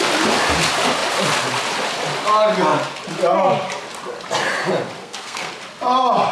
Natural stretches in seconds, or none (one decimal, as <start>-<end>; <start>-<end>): 0.0-5.0; 5.5-6.3